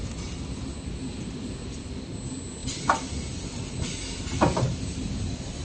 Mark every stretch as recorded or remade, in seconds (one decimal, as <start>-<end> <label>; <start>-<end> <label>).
0.0-5.6 recorded